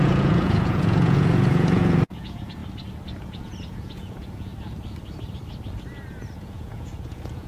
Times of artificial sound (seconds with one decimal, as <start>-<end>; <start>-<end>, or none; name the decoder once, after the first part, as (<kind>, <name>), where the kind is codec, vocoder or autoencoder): 0.0-2.6 (vocoder, Vocos); 3.2-4.5; 6.5-7.5